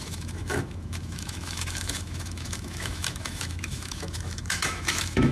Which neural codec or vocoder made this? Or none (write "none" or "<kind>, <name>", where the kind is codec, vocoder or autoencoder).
autoencoder, DAC-VAE